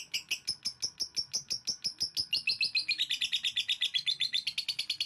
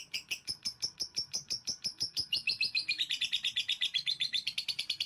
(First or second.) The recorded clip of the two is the first